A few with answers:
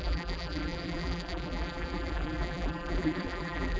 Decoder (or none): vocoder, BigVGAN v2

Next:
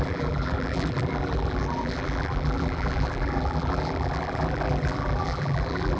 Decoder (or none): vocoder, BigVGAN v2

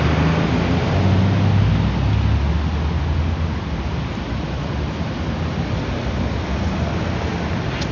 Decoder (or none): none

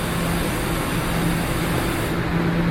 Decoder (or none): none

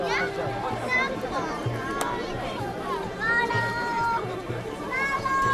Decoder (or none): vocoder, BigVGAN v2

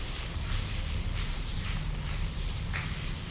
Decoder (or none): vocoder, BigVGAN v2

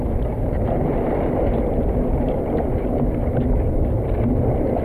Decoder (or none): none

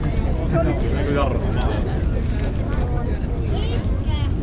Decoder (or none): none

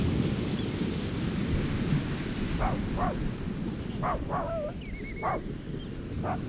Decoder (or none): none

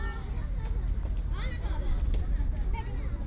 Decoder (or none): none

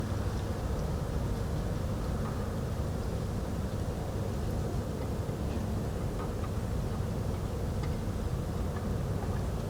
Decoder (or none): none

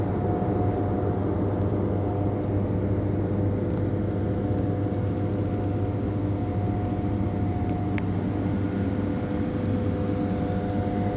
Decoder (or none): none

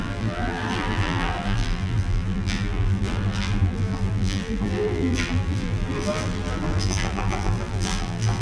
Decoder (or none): vocoder, BigVGAN v2